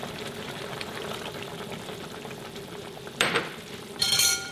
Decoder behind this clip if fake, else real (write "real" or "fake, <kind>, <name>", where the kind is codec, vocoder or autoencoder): fake, vocoder, BigVGAN v2